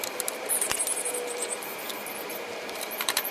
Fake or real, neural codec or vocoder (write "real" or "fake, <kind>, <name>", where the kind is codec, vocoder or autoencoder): fake, vocoder, BigVGAN v2